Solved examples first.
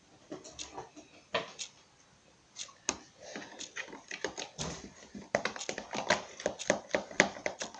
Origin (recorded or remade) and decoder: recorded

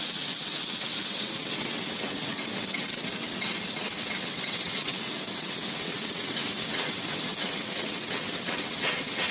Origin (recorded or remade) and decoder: remade, vocoder, WaveNeXt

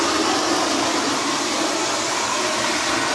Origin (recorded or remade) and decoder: recorded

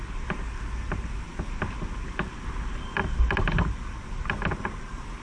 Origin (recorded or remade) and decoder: recorded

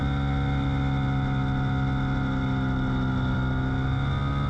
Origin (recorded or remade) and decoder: recorded